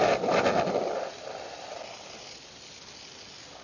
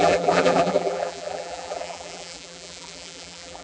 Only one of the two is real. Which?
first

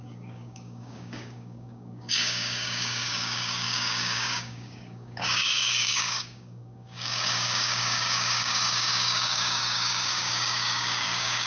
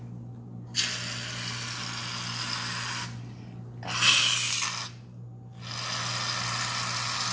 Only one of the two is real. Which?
second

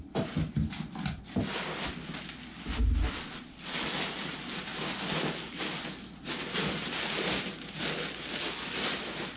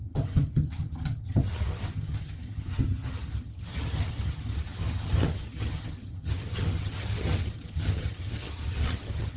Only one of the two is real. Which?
first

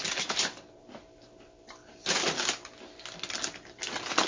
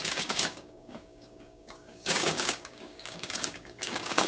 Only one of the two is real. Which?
first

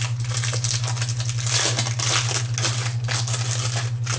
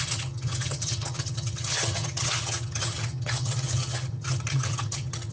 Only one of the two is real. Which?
first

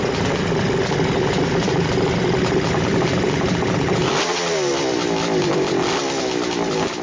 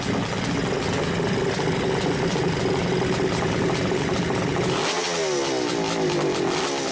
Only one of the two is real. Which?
second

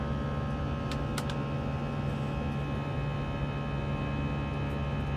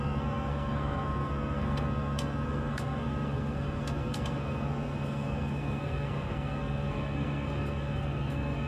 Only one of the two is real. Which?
first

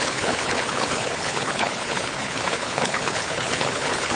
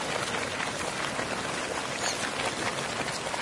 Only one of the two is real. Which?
second